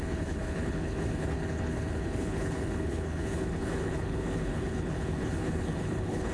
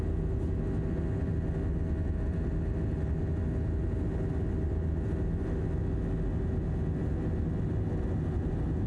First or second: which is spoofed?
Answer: first